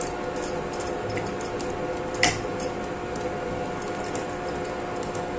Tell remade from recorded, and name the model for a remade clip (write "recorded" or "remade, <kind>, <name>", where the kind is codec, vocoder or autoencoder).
recorded